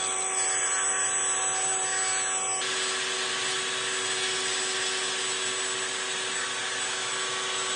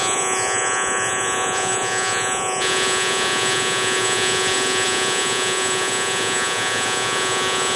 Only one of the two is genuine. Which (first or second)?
first